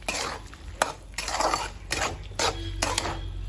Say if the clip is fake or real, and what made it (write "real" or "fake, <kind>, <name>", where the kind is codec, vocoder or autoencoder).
real